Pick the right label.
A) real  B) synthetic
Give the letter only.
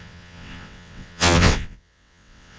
B